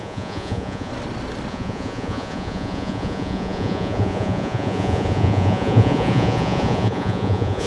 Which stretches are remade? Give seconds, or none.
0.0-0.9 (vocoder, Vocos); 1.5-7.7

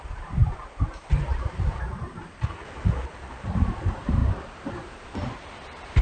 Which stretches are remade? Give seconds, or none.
0.0-0.4 (vocoder, BigVGAN v2); 1.6-2.2; 3.5-4.2; 4.7-6.0

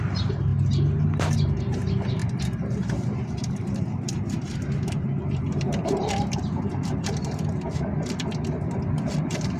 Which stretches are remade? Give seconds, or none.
2.2-7.5 (vocoder, BigVGAN v2)

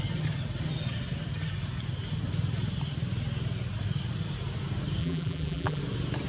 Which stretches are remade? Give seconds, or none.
5.0-5.8 (vocoder, BigVGAN v2)

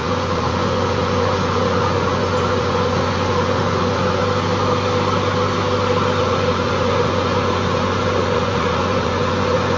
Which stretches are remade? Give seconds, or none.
0.0-4.2 (vocoder, Vocos); 6.2-9.8

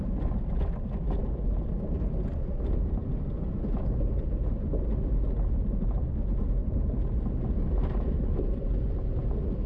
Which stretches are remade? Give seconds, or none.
none

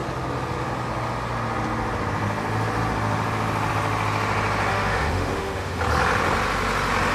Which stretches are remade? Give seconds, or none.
4.7-5.8 (autoencoder, DAC-VAE)

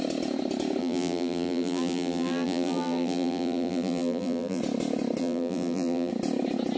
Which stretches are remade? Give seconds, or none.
0.8-4.6 (vocoder, BigVGAN v2); 5.2-6.1